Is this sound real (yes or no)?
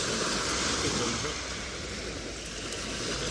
yes